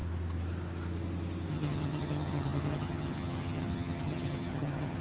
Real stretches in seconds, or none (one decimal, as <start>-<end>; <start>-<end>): 0.0-1.5